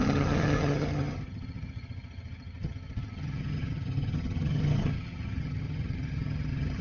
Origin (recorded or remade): remade